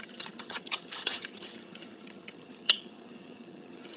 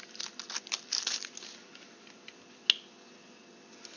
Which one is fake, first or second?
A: first